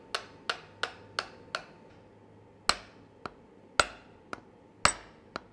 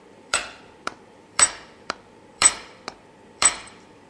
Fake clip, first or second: second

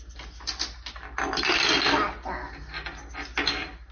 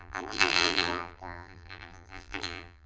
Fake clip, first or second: second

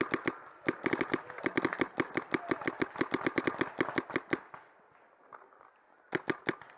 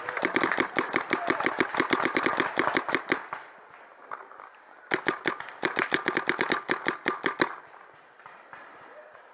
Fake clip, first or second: second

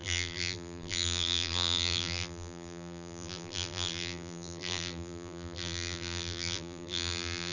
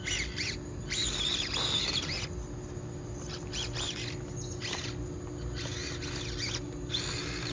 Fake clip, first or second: first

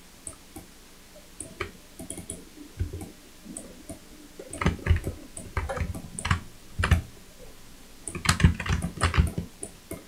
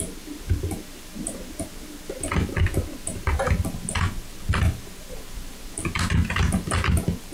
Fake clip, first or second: second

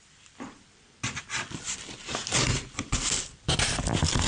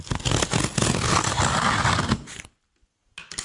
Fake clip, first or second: first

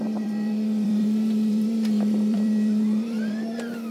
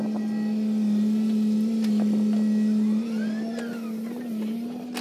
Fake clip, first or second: first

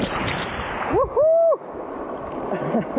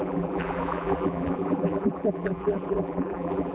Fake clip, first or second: second